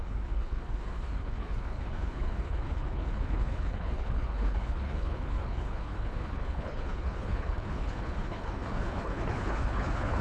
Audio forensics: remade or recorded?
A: remade